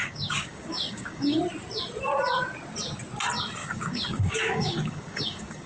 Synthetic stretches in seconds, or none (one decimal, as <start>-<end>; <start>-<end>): 0.0-1.4; 3.6-5.7